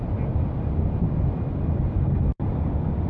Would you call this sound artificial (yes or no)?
no